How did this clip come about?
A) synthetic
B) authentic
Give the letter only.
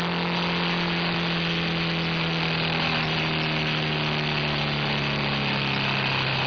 B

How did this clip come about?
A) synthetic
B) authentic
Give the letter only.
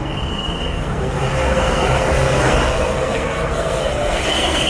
A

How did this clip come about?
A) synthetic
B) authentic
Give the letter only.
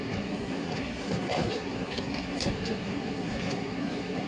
A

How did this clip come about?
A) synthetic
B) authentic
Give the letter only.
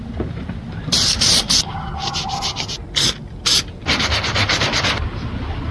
B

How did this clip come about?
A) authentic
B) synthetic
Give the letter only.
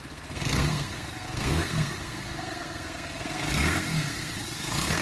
B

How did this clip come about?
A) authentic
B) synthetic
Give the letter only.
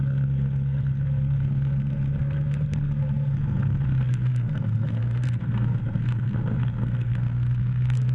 B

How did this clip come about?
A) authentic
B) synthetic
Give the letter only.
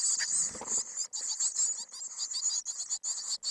A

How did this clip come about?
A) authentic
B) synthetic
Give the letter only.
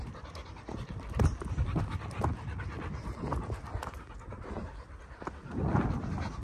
A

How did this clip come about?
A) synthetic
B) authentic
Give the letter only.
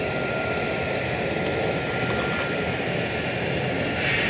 B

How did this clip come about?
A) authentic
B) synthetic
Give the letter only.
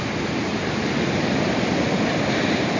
A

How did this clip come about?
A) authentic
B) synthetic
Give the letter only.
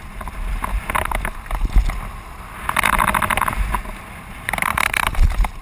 A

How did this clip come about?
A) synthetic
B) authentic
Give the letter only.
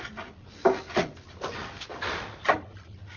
B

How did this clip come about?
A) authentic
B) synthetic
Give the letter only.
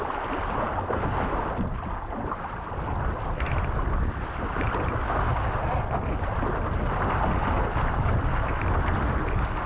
A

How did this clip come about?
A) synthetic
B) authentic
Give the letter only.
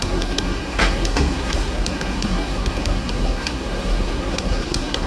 A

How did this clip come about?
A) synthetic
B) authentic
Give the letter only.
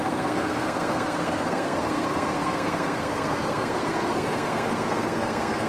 A